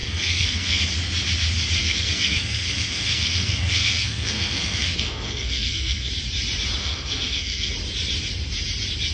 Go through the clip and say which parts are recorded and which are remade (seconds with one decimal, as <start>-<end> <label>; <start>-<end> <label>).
0.0-0.8 remade; 0.8-1.8 recorded; 1.8-6.1 remade; 6.1-6.8 recorded; 6.8-7.7 remade; 7.7-9.1 recorded